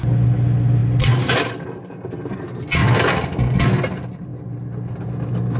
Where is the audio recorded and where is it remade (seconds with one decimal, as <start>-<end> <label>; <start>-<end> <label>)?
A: 0.0-5.6 recorded